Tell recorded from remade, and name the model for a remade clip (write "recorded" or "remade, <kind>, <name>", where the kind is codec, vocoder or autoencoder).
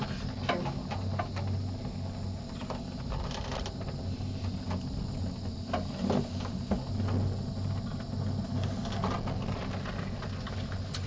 recorded